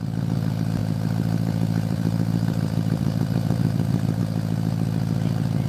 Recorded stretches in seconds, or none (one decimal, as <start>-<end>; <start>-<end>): 0.0-0.8; 4.2-5.7